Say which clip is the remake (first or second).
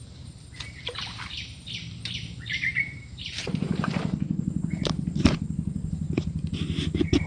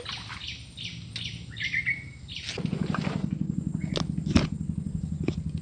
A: first